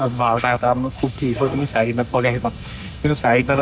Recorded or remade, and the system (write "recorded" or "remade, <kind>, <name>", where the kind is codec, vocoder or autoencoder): remade, codec, SNAC